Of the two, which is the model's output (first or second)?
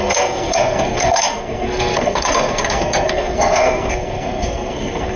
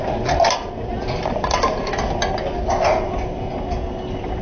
first